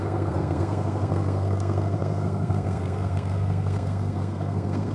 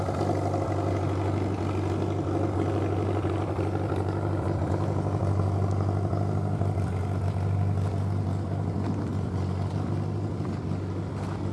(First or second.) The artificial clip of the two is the first